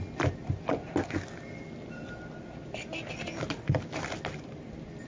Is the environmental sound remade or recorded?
recorded